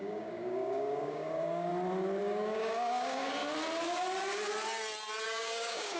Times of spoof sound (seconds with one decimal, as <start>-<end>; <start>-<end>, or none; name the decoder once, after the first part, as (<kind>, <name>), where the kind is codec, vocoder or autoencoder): 0.0-1.7 (codec, DAC); 2.2-3.4; 5.2-6.0